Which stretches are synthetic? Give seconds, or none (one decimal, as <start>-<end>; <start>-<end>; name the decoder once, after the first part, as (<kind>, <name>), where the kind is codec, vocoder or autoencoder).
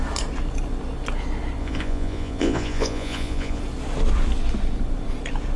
1.6-3.6 (vocoder, Vocos)